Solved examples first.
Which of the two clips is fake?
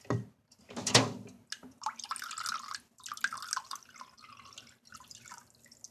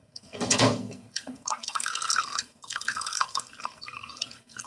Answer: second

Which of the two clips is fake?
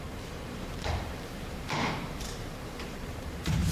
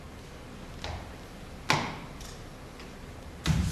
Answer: first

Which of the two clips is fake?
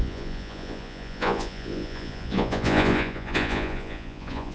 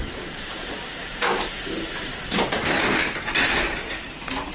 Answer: first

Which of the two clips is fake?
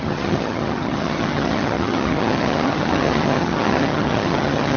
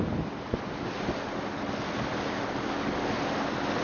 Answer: first